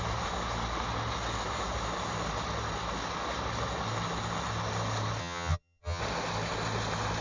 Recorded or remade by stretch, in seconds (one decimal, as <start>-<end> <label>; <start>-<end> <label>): 0.0-5.2 recorded; 5.2-6.0 remade; 6.0-7.2 recorded